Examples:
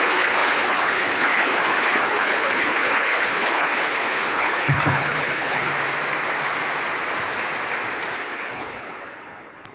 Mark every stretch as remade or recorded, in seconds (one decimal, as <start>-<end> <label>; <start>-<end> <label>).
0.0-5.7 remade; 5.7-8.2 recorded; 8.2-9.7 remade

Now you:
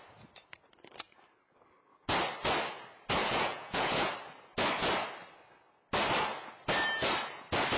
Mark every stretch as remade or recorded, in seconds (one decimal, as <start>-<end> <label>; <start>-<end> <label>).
0.0-3.2 recorded; 3.2-4.1 remade; 4.1-7.8 recorded

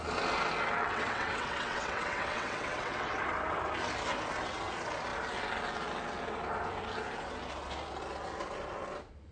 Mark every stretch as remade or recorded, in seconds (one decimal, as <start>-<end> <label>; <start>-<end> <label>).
0.0-0.8 recorded; 0.8-3.2 remade; 3.2-9.3 recorded

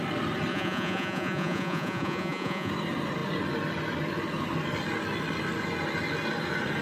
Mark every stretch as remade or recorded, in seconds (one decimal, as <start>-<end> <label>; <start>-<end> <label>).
0.0-0.5 recorded; 0.5-2.7 remade; 2.7-6.8 recorded

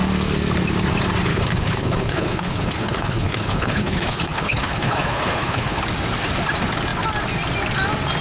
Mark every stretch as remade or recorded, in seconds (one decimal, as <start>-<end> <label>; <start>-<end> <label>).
0.0-1.3 recorded; 1.3-5.8 remade; 5.8-8.2 recorded